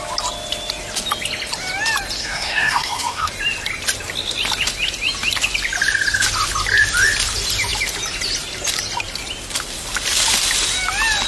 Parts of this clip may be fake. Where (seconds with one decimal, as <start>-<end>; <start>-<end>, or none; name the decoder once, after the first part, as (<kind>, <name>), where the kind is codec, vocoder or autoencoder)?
2.2-3.3 (codec, SNAC)